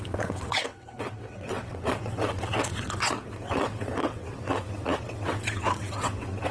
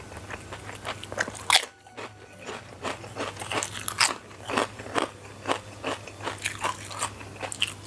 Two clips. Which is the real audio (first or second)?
second